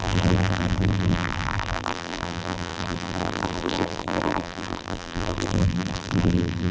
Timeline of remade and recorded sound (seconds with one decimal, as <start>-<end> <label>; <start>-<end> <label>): 0.0-6.7 remade